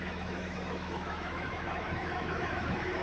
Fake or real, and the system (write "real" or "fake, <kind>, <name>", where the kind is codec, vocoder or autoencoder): fake, autoencoder, DAC-VAE